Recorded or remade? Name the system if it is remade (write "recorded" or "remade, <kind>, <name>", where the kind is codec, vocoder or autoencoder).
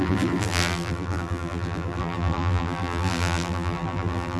remade, vocoder, BigVGAN v2